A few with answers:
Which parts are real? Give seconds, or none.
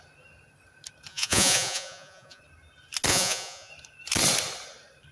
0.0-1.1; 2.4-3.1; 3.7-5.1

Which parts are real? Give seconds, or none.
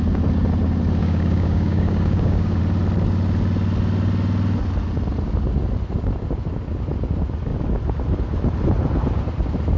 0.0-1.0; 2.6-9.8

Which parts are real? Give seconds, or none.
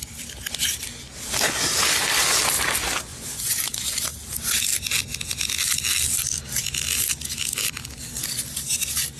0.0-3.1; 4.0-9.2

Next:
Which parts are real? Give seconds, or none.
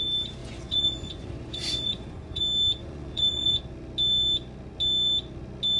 0.0-0.4; 2.4-2.8; 3.6-5.8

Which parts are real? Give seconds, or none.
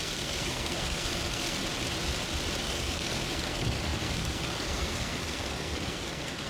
1.6-2.6